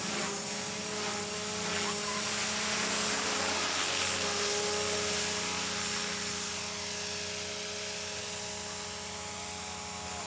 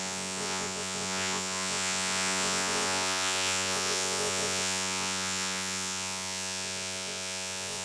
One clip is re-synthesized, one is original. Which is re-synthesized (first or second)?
second